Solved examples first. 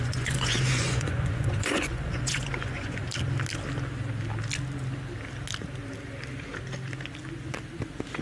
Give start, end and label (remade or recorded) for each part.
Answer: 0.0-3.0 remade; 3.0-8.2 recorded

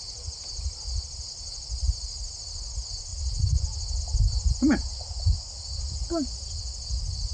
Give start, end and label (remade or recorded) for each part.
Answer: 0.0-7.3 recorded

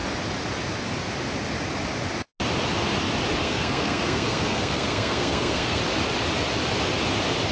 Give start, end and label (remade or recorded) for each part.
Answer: 0.0-3.4 recorded; 3.4-5.8 remade; 5.8-7.5 recorded